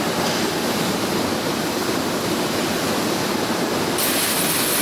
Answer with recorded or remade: recorded